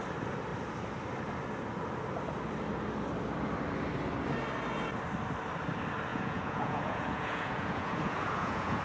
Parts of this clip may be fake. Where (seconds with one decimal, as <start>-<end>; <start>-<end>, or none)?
6.1-8.8